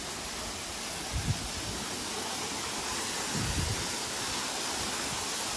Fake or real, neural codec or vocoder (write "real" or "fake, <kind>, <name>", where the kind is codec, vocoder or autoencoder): real